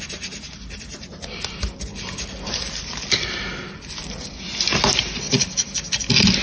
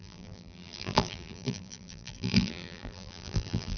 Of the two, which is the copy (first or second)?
second